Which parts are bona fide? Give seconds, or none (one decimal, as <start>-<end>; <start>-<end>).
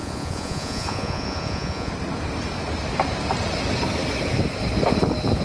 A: 1.9-5.4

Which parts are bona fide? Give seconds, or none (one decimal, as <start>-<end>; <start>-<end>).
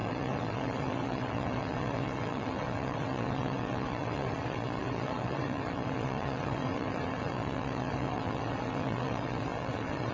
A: none